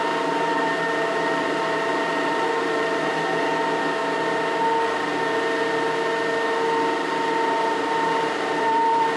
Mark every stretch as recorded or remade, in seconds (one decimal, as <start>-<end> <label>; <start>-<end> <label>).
0.0-3.5 remade; 3.5-8.6 recorded; 8.6-9.2 remade